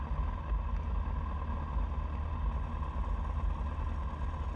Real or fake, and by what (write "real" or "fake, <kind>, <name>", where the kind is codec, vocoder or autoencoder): real